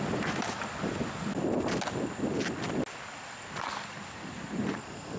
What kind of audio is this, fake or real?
real